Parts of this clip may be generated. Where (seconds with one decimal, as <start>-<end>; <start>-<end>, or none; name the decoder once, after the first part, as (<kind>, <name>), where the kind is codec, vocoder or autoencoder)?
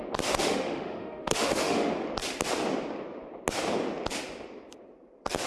0.4-1.9 (autoencoder, DAC-VAE)